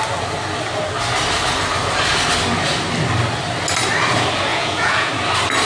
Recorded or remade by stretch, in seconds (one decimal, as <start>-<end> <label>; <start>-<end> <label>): 0.0-4.5 recorded; 4.5-5.1 remade; 5.1-5.7 recorded